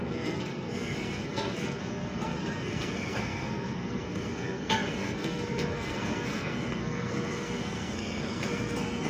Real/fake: fake